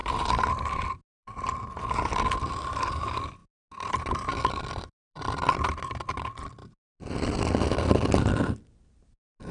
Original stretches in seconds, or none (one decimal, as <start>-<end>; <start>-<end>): 0.0-0.5; 3.4-3.9; 6.6-7.5

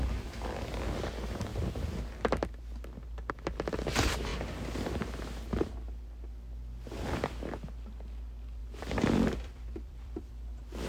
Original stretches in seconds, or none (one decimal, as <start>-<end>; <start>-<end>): 0.0-8.6; 10.3-10.9

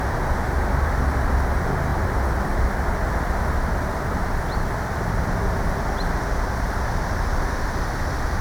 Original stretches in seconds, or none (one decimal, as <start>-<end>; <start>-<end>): 0.0-1.9; 4.4-8.4

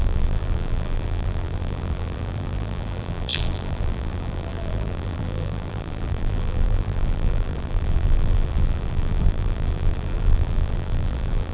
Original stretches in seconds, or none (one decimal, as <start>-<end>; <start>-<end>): none

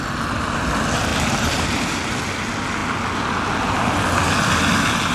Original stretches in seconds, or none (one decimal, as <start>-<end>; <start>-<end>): 0.0-1.1; 1.9-5.1

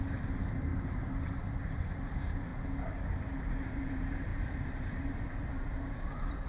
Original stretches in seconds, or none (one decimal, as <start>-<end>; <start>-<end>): 0.7-1.6; 2.5-3.4

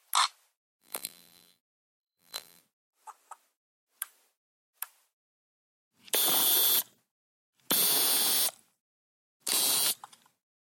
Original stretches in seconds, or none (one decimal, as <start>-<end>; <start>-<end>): 0.0-0.8; 2.6-10.6

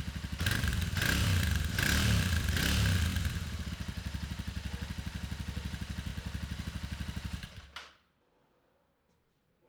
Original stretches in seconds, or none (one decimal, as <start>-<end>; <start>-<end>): 0.0-0.7; 2.6-3.1; 3.7-6.1; 8.4-9.7